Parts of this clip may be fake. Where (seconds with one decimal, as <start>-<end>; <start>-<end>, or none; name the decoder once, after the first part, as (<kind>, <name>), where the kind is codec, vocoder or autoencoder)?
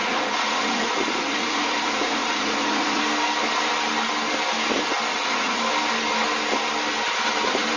0.0-3.0 (vocoder, Vocos); 5.1-5.6